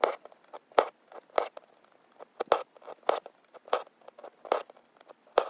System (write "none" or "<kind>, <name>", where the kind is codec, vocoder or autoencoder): none